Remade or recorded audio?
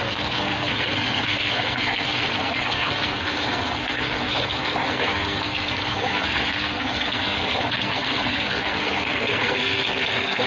remade